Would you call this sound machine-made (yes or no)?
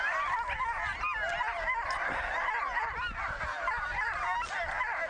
no